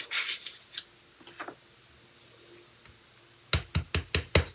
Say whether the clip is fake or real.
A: real